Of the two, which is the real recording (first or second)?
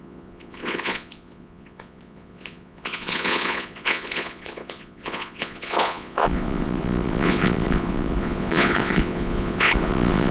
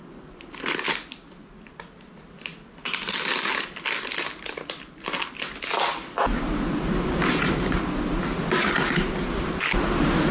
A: second